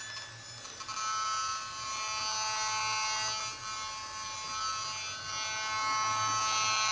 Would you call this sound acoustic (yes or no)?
yes